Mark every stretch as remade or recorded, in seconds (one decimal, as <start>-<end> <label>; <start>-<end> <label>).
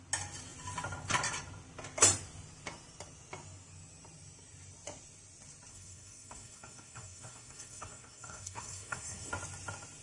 0.0-5.7 recorded; 5.7-9.3 remade; 9.3-10.0 recorded